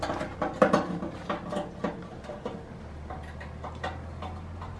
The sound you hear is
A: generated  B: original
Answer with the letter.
B